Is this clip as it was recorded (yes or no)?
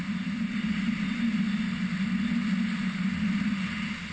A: yes